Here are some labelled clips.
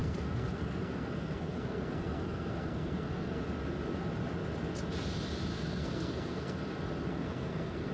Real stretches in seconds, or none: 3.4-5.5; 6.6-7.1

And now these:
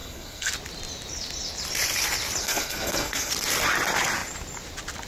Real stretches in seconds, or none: 0.5-2.4; 3.3-5.1

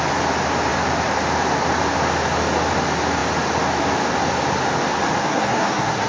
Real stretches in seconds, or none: 0.0-5.2

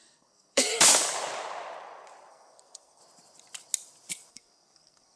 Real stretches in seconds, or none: 0.7-2.3; 3.0-4.3

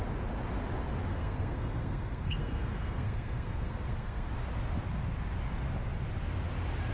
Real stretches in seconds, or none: 0.0-1.1; 4.3-6.9